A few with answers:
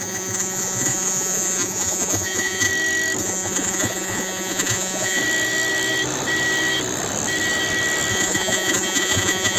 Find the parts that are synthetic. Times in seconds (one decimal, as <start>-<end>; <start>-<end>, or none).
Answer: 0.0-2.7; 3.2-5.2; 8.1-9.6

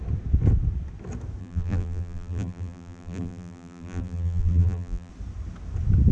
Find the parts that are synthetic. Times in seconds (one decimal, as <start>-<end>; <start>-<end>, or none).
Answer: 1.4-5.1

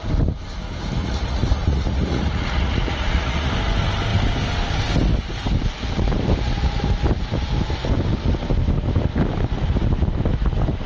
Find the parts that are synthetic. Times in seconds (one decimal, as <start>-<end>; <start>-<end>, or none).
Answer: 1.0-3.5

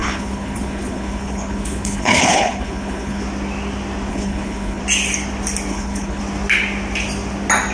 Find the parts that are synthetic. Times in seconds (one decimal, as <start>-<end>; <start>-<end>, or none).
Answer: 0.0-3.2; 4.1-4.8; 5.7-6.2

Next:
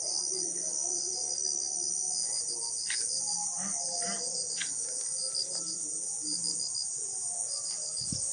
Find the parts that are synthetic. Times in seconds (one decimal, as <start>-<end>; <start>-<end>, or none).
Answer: none

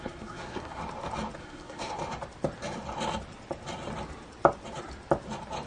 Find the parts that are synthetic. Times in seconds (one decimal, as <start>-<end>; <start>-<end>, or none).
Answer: 0.0-0.8; 1.4-2.0

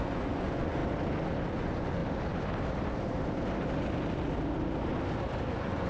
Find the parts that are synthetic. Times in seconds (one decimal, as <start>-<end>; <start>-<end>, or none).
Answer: 0.0-0.8; 1.5-2.0; 5.5-5.9